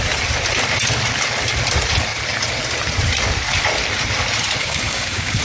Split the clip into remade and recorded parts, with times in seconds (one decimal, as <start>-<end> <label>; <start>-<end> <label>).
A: 0.0-4.6 recorded; 4.6-5.4 remade